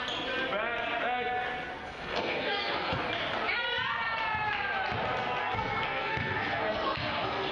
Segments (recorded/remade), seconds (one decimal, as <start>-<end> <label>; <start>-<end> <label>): 0.0-1.8 recorded; 1.8-3.0 remade; 3.0-5.4 recorded; 5.4-7.5 remade